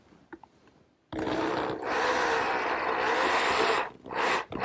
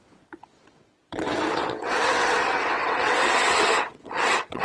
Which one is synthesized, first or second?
second